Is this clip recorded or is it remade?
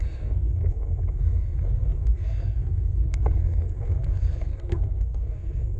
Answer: remade